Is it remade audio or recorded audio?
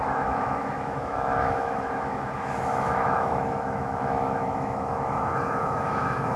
remade